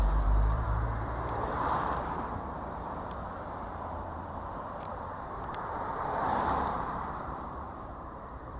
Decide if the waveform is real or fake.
fake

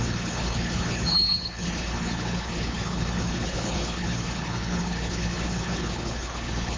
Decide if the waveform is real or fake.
fake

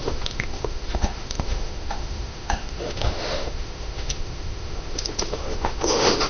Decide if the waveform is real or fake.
fake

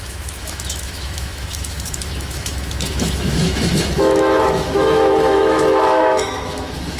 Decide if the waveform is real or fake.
fake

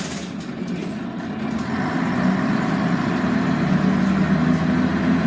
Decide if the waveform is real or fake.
real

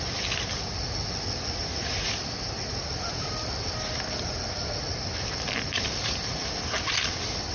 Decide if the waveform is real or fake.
real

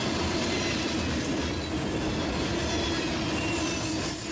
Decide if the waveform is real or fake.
real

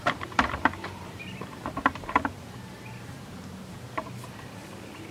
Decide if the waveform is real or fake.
fake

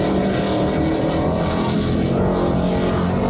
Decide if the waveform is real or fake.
real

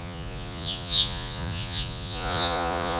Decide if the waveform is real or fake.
fake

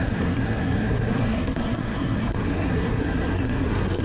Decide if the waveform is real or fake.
fake